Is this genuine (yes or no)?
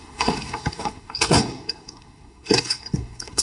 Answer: no